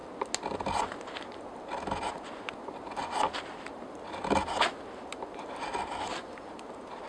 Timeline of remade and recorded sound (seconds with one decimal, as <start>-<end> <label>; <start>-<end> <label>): 0.0-7.1 recorded